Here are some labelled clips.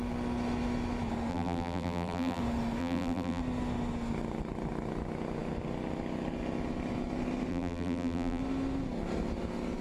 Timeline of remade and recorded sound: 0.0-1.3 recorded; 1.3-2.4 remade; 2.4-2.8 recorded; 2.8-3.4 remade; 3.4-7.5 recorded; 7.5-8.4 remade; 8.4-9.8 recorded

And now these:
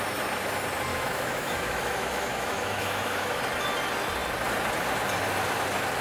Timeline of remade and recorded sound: 0.0-0.9 recorded; 0.9-3.4 remade; 3.4-6.0 recorded

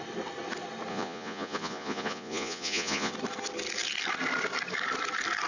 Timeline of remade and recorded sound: 0.0-0.9 recorded; 0.9-3.1 remade; 3.1-5.5 recorded

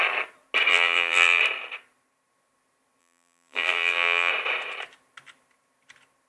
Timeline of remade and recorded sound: 0.0-0.7 recorded; 0.7-1.4 remade; 1.4-3.0 recorded; 3.0-4.3 remade; 4.3-6.3 recorded

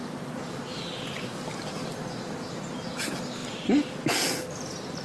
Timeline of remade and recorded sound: 0.0-5.0 recorded